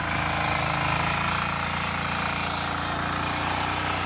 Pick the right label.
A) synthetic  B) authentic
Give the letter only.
B